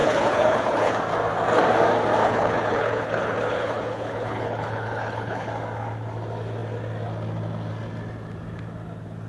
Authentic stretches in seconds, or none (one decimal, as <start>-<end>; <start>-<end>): 1.0-2.2; 5.5-9.3